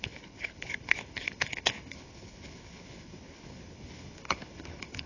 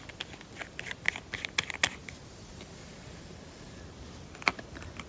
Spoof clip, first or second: first